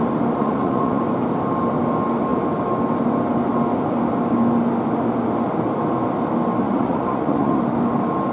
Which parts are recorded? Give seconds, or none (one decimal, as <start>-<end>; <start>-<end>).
0.0-0.4; 1.0-6.6; 7.6-8.3

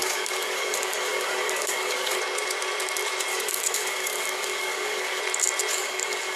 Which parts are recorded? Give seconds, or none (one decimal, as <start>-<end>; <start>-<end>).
2.2-3.3; 5.2-5.7

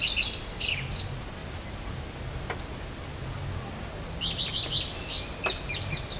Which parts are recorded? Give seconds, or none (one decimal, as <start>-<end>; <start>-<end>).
0.0-6.2

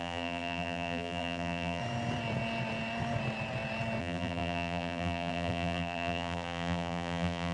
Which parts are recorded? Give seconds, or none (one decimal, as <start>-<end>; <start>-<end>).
1.8-4.0

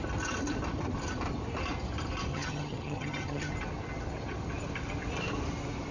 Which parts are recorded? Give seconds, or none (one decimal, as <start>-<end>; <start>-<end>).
0.0-2.3; 3.5-5.9

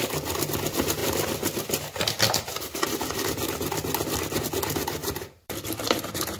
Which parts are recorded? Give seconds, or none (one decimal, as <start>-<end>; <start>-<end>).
0.0-5.0; 6.0-6.4

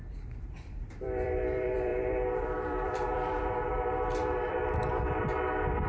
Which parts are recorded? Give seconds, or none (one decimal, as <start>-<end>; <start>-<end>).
none